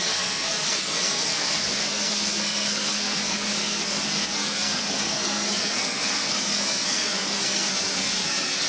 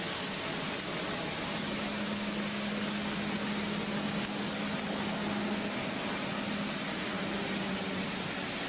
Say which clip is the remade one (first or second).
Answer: first